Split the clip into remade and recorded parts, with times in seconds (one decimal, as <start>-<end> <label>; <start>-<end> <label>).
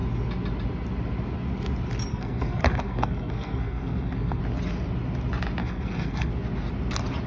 0.0-2.1 recorded; 2.1-4.4 remade; 4.4-5.6 recorded; 5.6-6.3 remade; 6.3-7.3 recorded